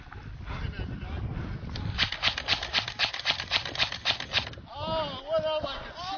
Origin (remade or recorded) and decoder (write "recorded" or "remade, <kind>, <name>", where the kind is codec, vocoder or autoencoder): recorded